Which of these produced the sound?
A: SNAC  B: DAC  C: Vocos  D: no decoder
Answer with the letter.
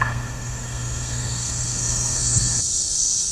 A